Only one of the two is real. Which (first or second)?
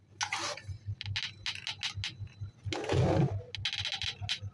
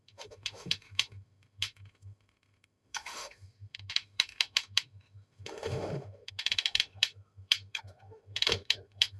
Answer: first